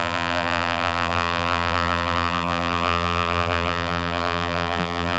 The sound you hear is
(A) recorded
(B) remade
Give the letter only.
B